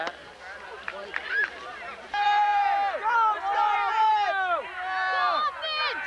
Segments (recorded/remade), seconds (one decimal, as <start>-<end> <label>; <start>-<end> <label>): 0.0-6.1 recorded